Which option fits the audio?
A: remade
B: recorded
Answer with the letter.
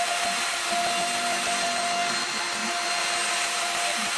B